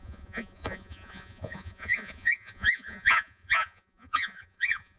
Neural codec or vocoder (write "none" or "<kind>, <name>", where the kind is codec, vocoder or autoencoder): vocoder, Vocos